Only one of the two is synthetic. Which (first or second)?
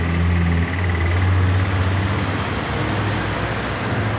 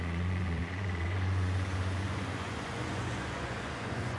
second